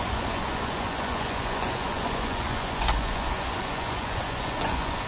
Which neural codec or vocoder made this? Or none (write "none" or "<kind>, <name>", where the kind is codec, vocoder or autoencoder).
vocoder, Vocos